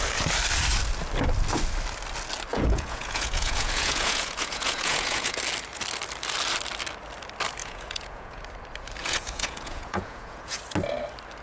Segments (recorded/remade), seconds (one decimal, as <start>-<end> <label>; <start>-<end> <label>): 0.0-2.5 recorded; 2.5-5.4 remade; 5.4-7.6 recorded; 7.6-8.4 remade; 8.4-9.0 recorded; 9.0-10.6 remade; 10.6-11.4 recorded